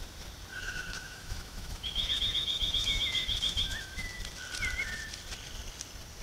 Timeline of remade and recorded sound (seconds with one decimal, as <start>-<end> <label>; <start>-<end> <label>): 0.0-0.5 recorded; 0.5-4.2 remade; 4.2-6.2 recorded